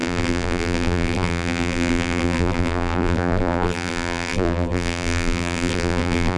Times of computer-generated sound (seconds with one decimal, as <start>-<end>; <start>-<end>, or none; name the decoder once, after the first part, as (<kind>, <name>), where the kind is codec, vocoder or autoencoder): 0.0-6.4 (vocoder, BigVGAN v2)